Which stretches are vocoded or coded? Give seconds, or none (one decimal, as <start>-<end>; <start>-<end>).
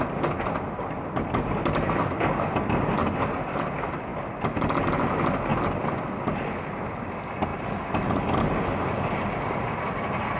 none